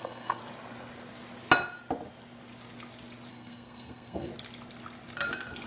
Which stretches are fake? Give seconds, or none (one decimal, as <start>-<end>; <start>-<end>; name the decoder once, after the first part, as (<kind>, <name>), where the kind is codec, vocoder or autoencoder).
0.0-0.4 (codec, SNAC); 3.3-4.3